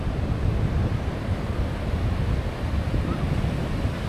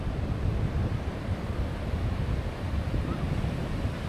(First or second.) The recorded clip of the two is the first